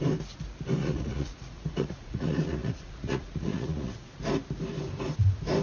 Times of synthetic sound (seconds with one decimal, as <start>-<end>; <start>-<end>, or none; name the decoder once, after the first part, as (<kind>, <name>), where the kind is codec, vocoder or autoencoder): 0.8-4.2 (vocoder, Vocos)